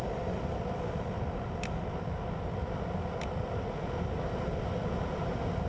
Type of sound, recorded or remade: recorded